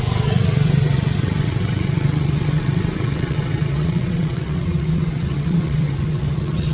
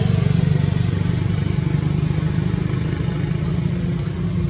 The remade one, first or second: first